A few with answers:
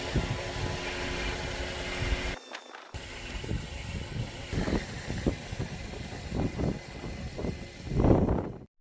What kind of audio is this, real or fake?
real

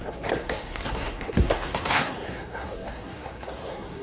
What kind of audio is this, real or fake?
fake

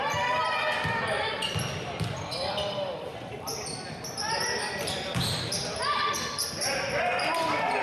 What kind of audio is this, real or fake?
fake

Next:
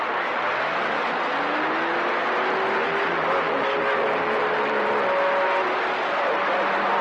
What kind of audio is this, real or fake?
real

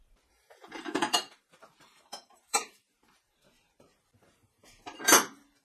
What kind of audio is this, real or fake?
fake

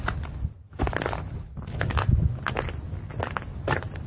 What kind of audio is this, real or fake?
real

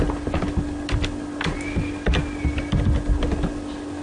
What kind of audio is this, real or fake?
real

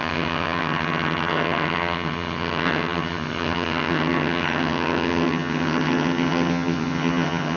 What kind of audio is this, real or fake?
fake